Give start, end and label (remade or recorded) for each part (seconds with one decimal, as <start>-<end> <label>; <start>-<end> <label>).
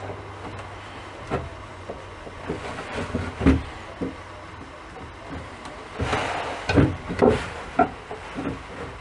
0.0-1.7 recorded; 1.7-3.3 remade; 3.3-9.0 recorded